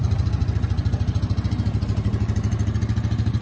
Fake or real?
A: real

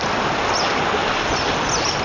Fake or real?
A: real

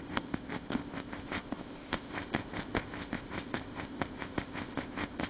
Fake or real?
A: fake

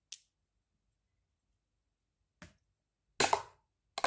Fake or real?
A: real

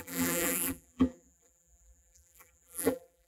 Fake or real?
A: fake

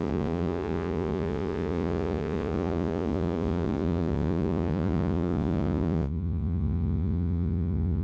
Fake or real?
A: fake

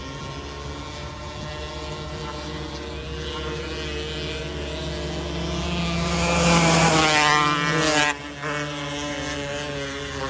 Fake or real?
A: real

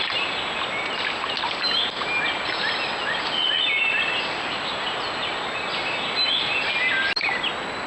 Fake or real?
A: real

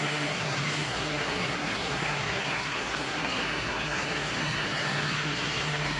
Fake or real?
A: fake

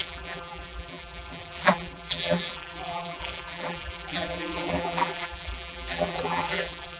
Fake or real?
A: fake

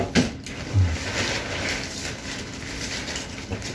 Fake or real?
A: real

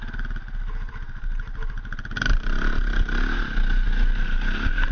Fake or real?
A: real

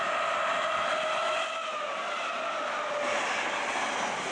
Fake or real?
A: real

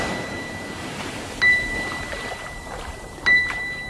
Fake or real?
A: fake